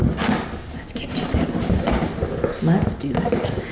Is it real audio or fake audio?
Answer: real